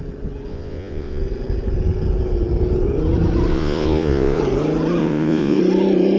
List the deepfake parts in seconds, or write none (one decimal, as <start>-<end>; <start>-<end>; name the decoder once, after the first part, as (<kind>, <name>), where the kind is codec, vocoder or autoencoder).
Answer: 0.5-1.2 (vocoder, Vocos); 3.5-4.4; 5.0-5.6